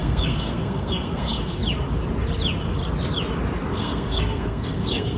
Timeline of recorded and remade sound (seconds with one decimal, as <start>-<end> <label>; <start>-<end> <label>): 0.0-1.6 remade; 1.6-3.7 recorded; 3.7-5.2 remade